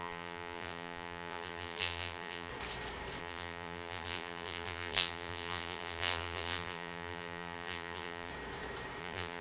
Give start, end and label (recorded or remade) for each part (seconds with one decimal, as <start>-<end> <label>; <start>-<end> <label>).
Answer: 0.0-2.5 remade; 2.5-3.2 recorded; 3.2-8.3 remade; 8.3-9.0 recorded; 9.0-9.4 remade